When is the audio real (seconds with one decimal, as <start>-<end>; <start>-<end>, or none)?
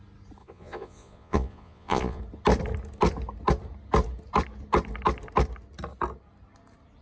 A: 0.0-0.4; 2.2-7.0